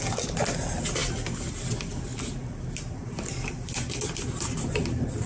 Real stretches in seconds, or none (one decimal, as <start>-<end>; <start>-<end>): 0.0-5.3